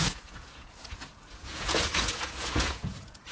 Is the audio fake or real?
fake